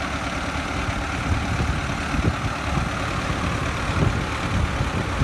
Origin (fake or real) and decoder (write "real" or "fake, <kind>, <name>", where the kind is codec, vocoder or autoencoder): real